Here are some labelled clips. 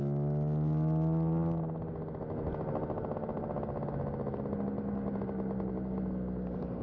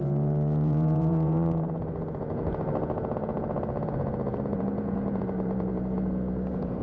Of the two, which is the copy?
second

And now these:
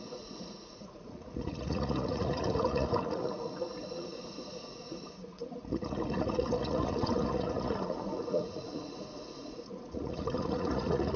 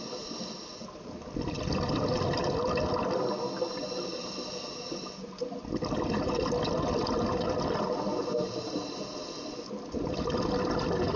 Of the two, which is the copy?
first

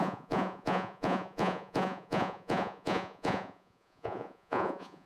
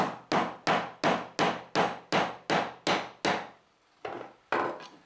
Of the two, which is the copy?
first